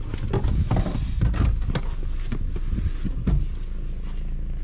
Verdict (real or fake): real